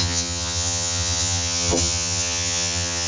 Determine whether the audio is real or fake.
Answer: fake